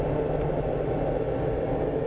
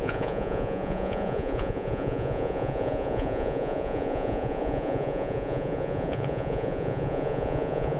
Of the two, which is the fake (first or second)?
second